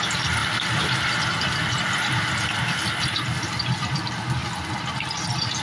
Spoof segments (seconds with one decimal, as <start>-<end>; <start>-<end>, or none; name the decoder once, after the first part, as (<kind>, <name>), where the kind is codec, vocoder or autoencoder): 0.4-3.8 (vocoder, BigVGAN v2)

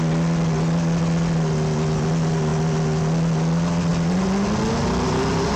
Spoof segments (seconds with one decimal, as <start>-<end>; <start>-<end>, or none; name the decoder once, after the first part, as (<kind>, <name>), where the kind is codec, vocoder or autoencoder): none

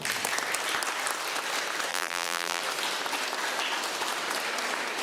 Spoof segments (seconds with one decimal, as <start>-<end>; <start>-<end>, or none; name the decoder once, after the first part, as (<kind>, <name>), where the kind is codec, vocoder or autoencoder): 1.9-2.6 (vocoder, BigVGAN v2)

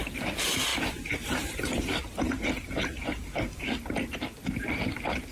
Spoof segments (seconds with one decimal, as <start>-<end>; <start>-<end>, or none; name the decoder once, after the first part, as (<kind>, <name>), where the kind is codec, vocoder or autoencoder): 0.7-3.6 (vocoder, BigVGAN v2)

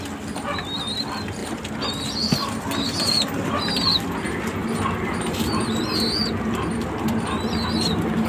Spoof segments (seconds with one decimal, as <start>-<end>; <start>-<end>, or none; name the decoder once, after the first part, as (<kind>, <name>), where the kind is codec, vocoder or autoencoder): none